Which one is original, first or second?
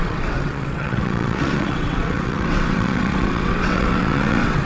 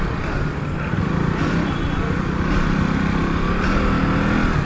second